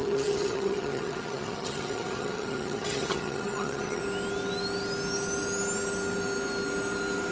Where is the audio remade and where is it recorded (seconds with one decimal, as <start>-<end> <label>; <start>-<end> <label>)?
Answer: 0.0-4.0 remade; 4.0-7.3 recorded

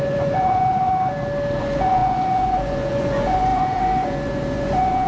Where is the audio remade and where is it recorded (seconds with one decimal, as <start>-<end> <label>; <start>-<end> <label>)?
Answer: 0.0-0.9 remade; 0.9-1.6 recorded; 1.6-5.1 remade

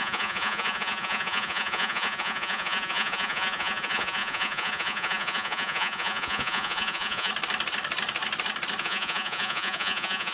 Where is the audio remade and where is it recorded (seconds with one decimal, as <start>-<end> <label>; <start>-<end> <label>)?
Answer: 0.0-7.3 remade; 7.3-8.8 recorded; 8.8-10.3 remade

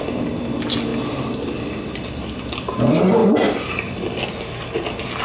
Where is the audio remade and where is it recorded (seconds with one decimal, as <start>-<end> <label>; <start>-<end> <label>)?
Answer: 0.0-5.2 recorded

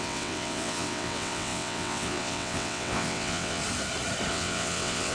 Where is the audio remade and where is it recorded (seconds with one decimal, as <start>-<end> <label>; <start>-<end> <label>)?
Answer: 0.0-3.6 remade; 3.6-4.3 recorded; 4.3-5.1 remade

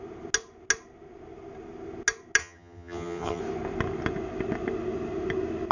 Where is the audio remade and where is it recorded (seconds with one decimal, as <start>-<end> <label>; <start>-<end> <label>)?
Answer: 0.0-2.4 recorded; 2.4-3.4 remade; 3.4-5.7 recorded

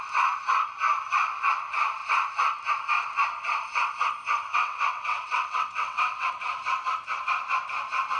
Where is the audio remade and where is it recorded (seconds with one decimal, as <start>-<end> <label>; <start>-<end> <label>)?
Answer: 0.0-4.5 recorded; 4.5-6.3 remade; 6.3-8.2 recorded

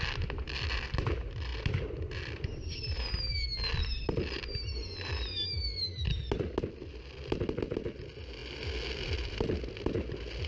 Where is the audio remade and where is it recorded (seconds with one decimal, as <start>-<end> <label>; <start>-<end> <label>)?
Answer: 0.0-10.5 recorded